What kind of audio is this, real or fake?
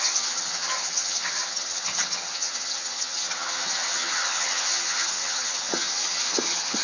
fake